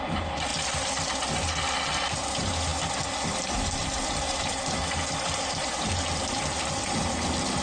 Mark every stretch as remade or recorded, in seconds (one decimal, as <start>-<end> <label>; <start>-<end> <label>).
0.0-7.6 recorded

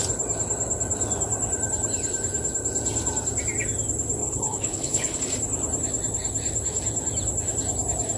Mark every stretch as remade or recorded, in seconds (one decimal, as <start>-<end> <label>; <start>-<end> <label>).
0.0-4.2 recorded; 4.2-5.2 remade; 5.2-8.2 recorded

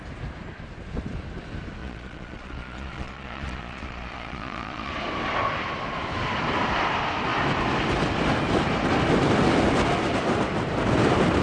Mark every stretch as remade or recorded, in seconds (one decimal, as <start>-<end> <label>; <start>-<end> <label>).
0.0-1.8 recorded; 1.8-4.9 remade; 4.9-11.4 recorded

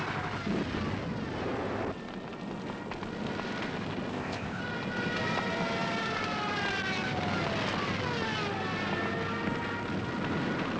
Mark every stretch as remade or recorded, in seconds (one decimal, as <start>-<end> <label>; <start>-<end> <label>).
0.0-4.1 recorded; 4.1-4.6 remade; 4.6-10.8 recorded

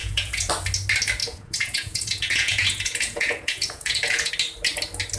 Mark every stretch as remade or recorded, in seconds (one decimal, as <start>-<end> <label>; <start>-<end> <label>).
0.0-0.5 remade; 0.5-1.2 recorded; 1.2-4.3 remade; 4.3-5.2 recorded

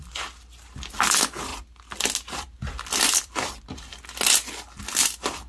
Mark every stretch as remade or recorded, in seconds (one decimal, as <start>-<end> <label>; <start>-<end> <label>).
0.0-1.5 remade; 1.5-2.9 recorded; 2.9-3.9 remade; 3.9-4.8 recorded; 4.8-5.5 remade

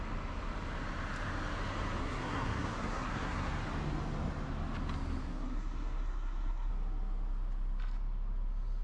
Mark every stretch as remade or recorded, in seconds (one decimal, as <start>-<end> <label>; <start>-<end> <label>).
0.0-2.0 recorded; 2.0-3.5 remade; 3.5-5.2 recorded; 5.2-6.7 remade; 6.7-8.8 recorded

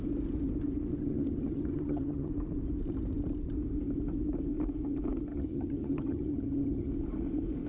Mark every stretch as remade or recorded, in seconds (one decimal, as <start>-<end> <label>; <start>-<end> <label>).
0.0-0.9 recorded; 0.9-2.3 remade; 2.3-5.3 recorded; 5.3-6.9 remade; 6.9-7.7 recorded